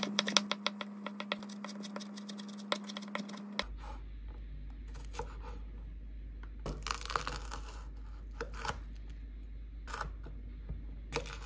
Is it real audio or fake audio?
real